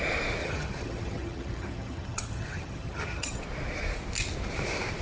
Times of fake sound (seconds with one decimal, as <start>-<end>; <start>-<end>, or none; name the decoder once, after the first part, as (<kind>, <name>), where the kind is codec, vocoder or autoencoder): 0.4-3.4 (vocoder, HiFi-GAN)